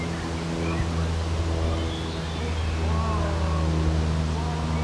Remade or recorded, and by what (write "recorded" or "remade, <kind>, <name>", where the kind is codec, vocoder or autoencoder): recorded